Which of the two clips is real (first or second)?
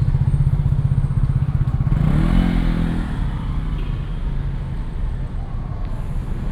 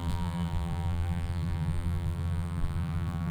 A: first